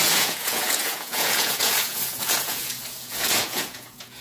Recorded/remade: remade